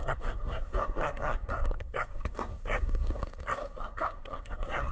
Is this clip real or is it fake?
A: fake